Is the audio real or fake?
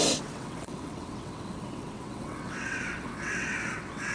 fake